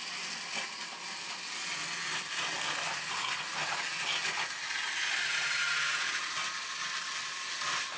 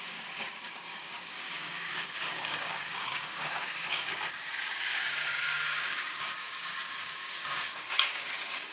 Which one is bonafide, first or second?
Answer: first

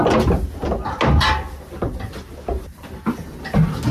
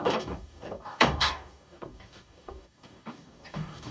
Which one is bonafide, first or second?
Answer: first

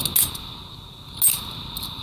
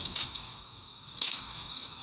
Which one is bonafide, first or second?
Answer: first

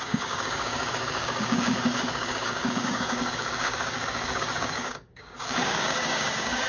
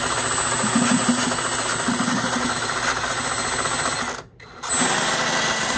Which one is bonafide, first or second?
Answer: second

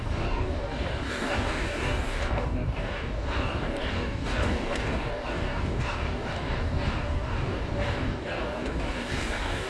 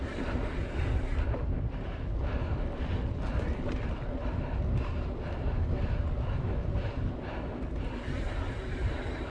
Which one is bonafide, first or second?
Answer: second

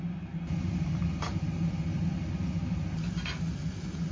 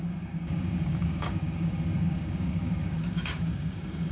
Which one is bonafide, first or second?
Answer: first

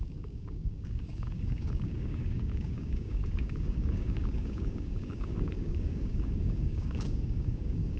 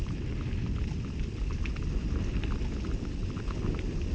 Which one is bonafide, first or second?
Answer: second